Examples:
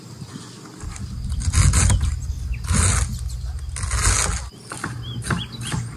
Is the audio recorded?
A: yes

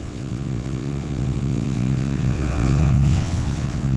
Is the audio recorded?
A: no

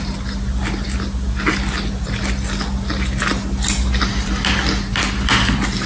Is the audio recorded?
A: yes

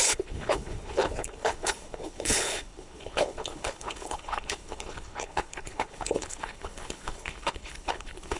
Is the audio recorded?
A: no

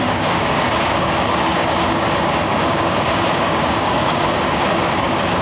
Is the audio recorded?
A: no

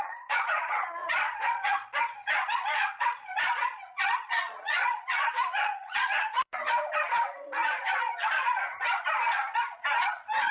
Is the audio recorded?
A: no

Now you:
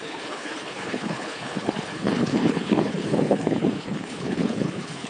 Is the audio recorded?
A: no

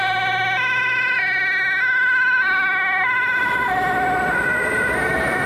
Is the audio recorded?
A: yes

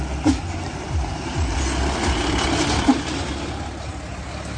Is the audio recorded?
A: yes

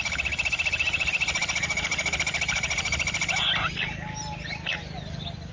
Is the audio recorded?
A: yes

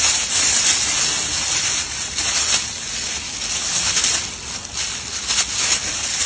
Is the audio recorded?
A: yes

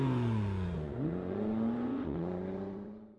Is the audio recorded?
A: no